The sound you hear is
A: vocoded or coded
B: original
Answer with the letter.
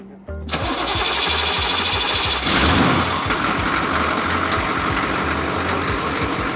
B